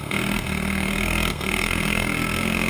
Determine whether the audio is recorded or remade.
remade